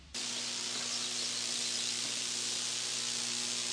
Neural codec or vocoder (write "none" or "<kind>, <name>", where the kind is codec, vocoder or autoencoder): none